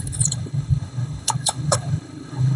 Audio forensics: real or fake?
fake